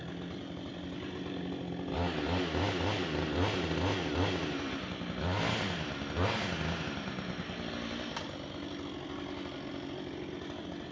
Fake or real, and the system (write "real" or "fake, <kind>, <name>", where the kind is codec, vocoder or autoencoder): real